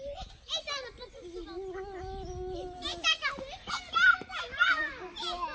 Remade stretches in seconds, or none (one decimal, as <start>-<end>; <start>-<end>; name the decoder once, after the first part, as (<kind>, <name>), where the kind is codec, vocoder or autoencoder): none